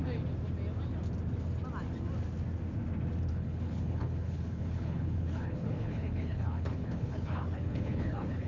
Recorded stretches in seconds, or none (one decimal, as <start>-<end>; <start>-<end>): 0.0-3.3